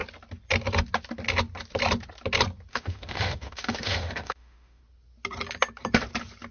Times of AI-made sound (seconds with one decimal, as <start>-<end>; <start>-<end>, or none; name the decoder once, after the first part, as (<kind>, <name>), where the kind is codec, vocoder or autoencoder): 2.7-4.8 (autoencoder, DAC-VAE)